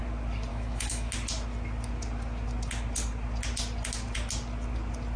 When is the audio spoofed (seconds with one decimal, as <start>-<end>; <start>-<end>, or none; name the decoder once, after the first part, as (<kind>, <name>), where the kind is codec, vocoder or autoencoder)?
0.5-1.1 (autoencoder, DAC-VAE)